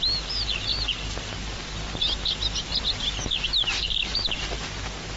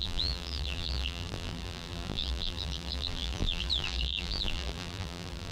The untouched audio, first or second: first